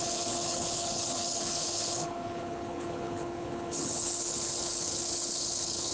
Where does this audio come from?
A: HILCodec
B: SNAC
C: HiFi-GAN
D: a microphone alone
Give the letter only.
A